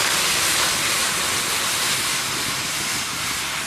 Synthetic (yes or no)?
no